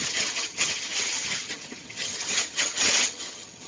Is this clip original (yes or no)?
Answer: no